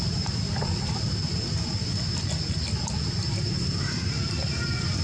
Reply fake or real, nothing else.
real